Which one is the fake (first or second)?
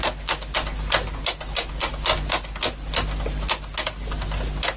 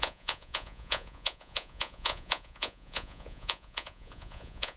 second